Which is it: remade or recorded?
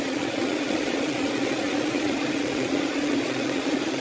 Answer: remade